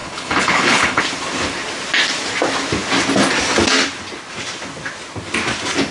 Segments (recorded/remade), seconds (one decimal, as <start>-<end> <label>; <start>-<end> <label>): 0.0-1.0 remade; 1.0-5.9 recorded